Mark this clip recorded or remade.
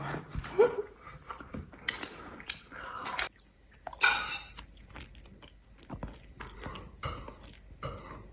recorded